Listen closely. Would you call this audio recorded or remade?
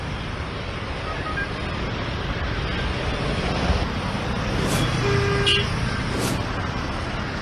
recorded